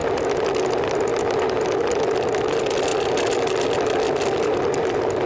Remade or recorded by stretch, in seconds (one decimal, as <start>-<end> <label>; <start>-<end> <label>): 0.0-5.3 recorded